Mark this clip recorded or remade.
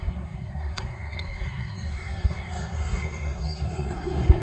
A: remade